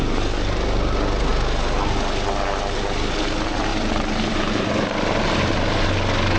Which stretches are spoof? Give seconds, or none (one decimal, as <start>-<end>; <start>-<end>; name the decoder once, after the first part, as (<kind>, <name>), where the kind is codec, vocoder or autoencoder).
3.7-5.5 (vocoder, BigVGAN v2)